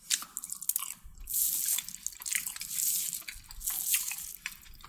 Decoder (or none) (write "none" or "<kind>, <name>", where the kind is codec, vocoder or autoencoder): none